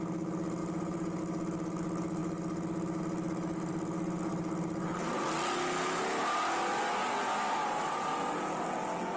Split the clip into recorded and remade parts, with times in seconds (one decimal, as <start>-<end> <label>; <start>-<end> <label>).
0.0-0.6 recorded; 0.6-1.2 remade; 1.2-7.6 recorded; 7.6-8.1 remade; 8.1-9.2 recorded